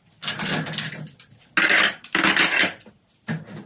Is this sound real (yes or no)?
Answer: yes